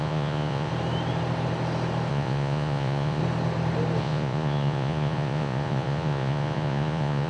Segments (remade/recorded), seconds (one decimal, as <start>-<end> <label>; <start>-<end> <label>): 0.0-0.7 remade; 0.7-2.1 recorded; 2.1-3.2 remade; 3.2-4.0 recorded; 4.0-7.3 remade